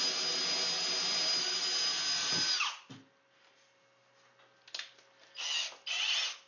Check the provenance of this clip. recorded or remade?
recorded